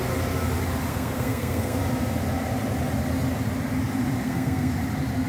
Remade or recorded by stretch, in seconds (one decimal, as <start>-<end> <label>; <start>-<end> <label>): 0.0-0.9 recorded; 0.9-1.8 remade; 1.8-4.2 recorded; 4.2-4.7 remade; 4.7-5.3 recorded